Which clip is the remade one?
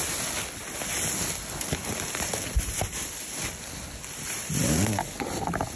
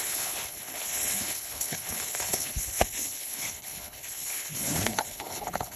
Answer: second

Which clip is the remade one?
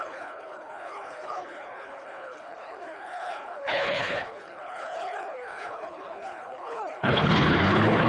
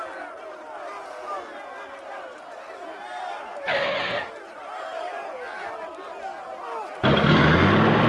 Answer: first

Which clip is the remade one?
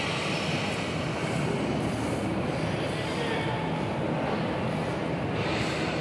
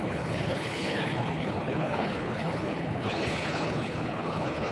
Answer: second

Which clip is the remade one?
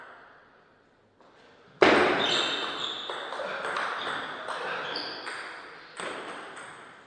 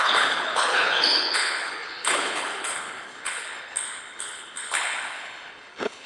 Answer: second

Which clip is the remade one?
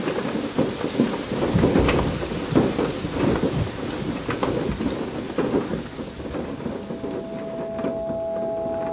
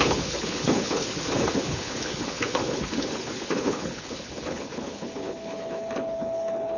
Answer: second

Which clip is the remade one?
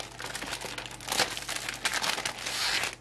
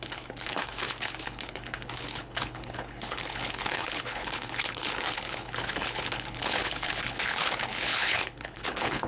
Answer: second